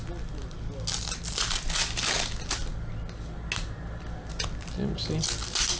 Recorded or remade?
recorded